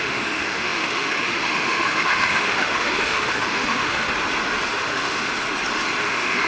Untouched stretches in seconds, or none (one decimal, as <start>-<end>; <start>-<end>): 4.1-4.7; 5.3-6.0